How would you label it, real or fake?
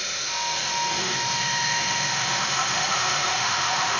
fake